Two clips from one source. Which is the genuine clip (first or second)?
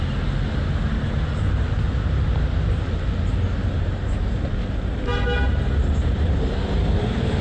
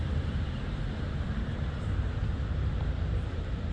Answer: first